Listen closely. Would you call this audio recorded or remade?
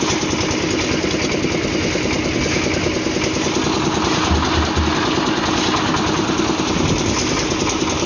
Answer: recorded